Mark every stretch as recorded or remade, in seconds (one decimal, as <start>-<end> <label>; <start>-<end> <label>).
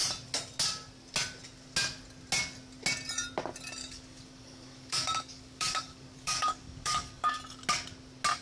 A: 0.0-3.8 recorded; 3.8-7.4 remade; 7.4-8.4 recorded